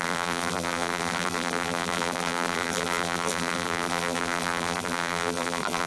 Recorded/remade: remade